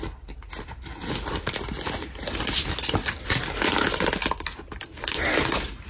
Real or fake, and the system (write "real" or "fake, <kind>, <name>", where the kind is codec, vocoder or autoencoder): real